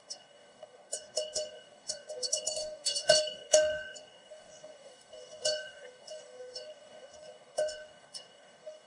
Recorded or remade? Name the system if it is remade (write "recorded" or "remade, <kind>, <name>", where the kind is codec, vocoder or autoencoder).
remade, codec, DAC